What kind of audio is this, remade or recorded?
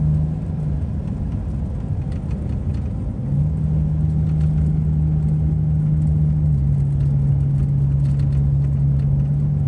recorded